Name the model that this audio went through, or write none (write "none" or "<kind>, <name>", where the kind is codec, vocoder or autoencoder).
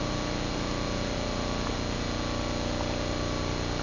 none